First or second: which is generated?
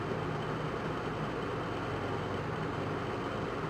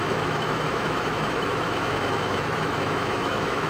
second